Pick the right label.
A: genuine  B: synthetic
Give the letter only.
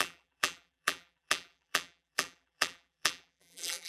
B